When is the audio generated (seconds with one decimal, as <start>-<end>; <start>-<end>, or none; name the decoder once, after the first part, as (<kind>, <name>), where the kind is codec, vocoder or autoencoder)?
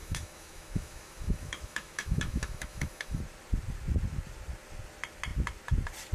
0.0-3.2 (autoencoder, DAC-VAE)